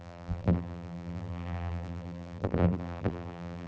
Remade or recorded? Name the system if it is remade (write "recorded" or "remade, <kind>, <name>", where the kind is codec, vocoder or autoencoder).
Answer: remade, vocoder, BigVGAN v2